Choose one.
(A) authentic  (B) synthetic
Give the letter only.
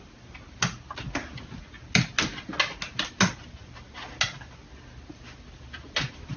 A